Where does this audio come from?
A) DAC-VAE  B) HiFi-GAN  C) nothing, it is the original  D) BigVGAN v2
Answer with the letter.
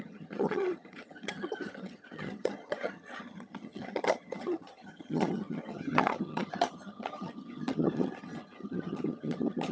B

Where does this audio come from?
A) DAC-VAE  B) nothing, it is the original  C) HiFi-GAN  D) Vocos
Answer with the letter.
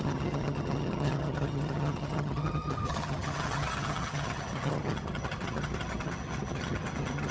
C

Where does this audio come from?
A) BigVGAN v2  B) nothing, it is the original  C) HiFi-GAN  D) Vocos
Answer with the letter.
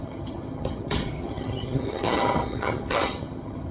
C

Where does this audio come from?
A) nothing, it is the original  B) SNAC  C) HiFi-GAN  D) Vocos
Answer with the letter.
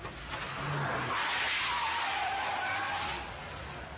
A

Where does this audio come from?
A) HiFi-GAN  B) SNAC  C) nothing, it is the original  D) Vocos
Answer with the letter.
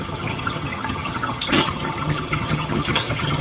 A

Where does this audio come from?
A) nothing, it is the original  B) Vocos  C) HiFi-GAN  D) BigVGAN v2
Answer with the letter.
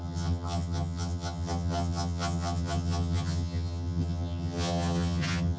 C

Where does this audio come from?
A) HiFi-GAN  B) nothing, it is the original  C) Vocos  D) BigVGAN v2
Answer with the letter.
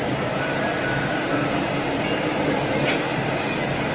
B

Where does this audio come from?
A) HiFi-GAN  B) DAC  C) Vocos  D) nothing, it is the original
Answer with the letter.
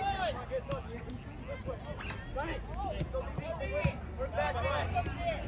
D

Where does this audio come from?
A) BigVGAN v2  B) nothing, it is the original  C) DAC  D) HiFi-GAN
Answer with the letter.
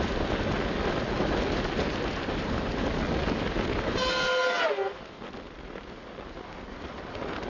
B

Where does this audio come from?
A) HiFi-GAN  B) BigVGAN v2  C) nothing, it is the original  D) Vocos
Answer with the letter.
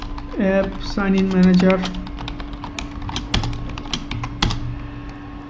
C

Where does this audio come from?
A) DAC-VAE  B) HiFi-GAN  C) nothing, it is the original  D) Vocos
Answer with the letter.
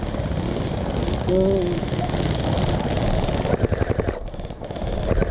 C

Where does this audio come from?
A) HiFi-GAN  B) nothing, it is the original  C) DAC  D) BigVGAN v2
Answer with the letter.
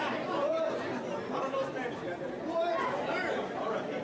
B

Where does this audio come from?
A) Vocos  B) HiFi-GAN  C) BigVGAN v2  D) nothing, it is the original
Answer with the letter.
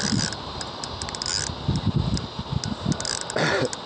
D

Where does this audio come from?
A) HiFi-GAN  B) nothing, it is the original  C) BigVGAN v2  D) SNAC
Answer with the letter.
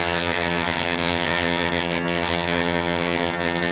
A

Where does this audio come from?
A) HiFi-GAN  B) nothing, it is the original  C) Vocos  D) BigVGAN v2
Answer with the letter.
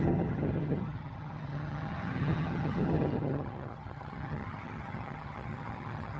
A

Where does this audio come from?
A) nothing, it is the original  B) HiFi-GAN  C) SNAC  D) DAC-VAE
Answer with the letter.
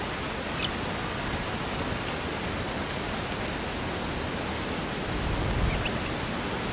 A